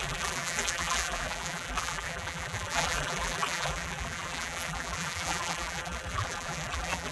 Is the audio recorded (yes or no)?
no